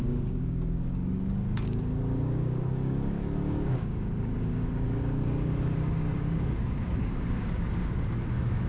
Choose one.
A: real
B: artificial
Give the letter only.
B